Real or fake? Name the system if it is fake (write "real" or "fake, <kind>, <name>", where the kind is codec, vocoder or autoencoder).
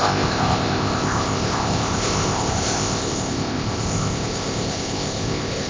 fake, codec, ZipCodec